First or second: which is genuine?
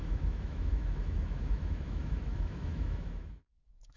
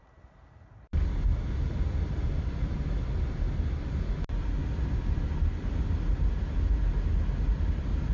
second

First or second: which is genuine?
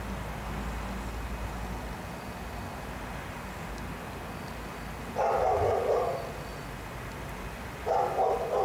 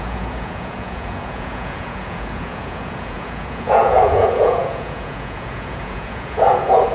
first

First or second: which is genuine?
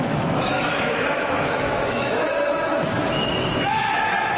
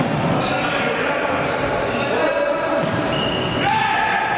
second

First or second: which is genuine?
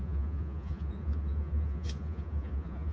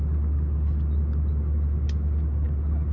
second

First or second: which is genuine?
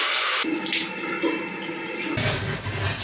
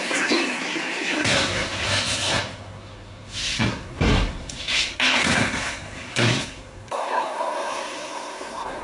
first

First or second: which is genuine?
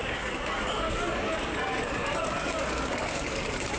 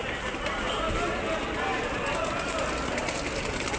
second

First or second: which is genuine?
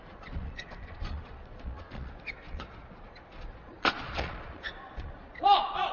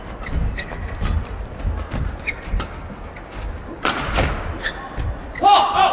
second